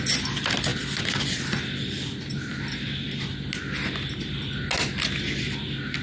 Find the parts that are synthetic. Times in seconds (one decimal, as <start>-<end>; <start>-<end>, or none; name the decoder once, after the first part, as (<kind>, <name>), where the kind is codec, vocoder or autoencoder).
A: none